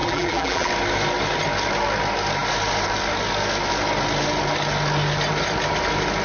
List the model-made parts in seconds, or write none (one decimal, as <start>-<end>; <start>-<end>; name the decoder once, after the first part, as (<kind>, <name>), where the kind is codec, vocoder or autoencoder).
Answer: 0.0-0.7 (vocoder, BigVGAN v2)

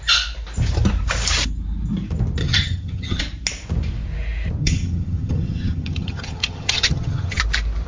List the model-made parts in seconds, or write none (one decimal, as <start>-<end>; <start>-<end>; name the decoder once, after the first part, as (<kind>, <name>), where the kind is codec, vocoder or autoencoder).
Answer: 2.4-3.2 (vocoder, HiFi-GAN); 4.6-7.4

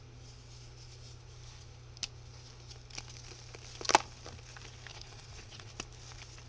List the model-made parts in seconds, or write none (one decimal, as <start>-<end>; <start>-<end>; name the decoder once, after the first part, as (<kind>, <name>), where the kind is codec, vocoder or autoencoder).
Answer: 4.9-5.7 (vocoder, Vocos)

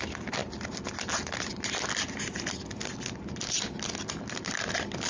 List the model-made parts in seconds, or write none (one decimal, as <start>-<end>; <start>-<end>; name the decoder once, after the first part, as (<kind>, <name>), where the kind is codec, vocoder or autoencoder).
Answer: none

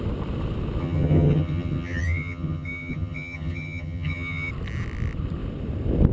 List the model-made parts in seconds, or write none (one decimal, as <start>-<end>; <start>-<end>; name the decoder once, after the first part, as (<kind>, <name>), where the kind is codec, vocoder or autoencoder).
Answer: 0.8-4.5 (vocoder, HiFi-GAN)